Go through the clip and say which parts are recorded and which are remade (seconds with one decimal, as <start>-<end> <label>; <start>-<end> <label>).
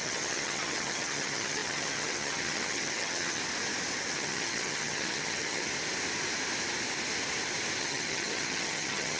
0.0-3.4 remade; 3.4-4.1 recorded; 4.1-5.7 remade; 5.7-7.8 recorded; 7.8-9.2 remade